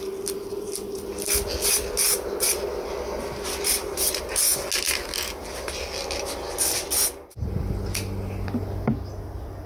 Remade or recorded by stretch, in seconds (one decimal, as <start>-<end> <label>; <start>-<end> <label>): 0.0-9.7 recorded